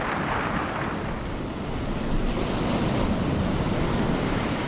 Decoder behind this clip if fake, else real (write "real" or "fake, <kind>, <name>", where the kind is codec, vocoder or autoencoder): real